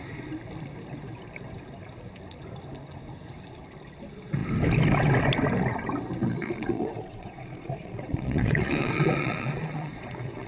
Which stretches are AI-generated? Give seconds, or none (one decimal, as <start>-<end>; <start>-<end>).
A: 6.2-10.5